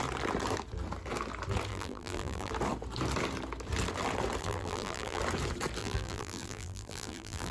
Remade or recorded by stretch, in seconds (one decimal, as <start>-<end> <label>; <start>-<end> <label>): 0.0-1.7 recorded; 1.7-2.5 remade; 2.5-4.4 recorded; 4.4-5.2 remade; 5.2-5.8 recorded; 5.8-7.5 remade